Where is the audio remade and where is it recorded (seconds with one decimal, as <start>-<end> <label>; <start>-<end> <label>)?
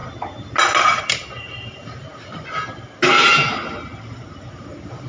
0.0-5.1 recorded